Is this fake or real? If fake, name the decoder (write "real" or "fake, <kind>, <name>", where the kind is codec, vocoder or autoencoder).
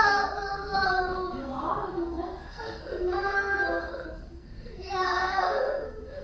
fake, codec, SNAC